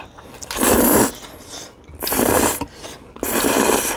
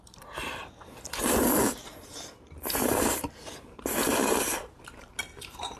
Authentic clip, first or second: first